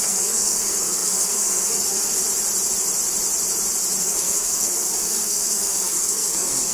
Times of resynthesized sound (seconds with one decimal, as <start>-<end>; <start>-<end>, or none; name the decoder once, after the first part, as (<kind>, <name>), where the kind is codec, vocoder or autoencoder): 0.0-2.2 (codec, SNAC); 4.0-6.7